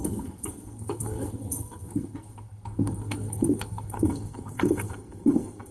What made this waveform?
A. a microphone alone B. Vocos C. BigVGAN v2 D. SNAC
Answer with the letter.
D